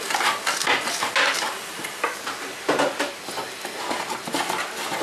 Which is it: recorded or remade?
recorded